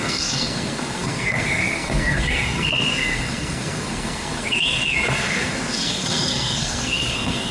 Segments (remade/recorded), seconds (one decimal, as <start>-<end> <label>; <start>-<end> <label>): 0.0-7.5 remade